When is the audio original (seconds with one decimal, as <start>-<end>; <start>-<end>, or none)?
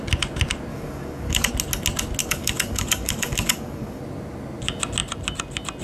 0.0-0.7; 1.5-2.2; 4.0-5.8